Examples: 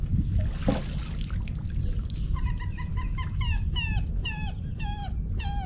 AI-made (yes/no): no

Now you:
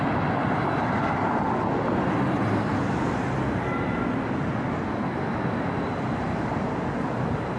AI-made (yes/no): no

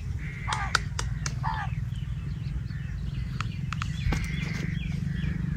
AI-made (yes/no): no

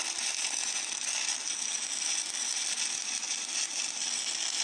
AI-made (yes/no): no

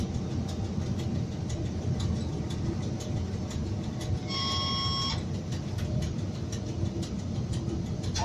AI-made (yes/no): no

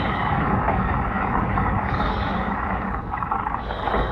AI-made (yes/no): yes